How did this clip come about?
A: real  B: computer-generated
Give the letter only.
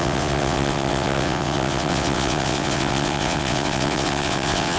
B